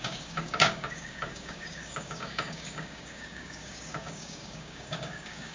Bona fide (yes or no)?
no